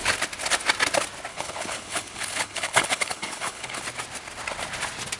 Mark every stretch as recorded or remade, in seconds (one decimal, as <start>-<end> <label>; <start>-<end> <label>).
0.0-1.3 recorded; 1.3-3.8 remade; 3.8-5.2 recorded